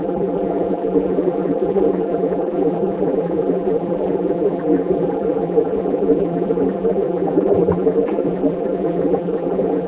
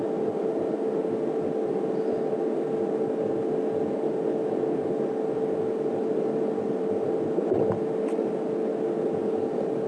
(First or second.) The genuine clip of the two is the second